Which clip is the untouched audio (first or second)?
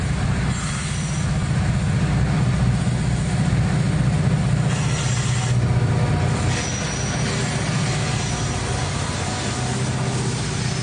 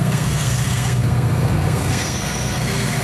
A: first